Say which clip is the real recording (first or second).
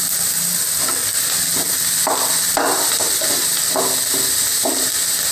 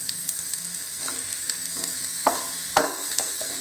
first